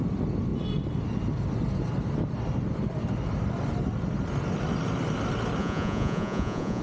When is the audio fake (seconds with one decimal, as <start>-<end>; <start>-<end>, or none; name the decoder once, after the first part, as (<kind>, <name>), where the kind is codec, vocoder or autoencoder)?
5.6-6.8 (vocoder, Vocos)